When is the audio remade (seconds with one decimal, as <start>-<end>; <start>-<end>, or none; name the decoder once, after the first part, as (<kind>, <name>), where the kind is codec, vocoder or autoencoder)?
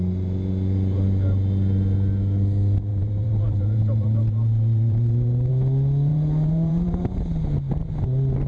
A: 2.9-5.5 (vocoder, BigVGAN v2); 6.1-7.2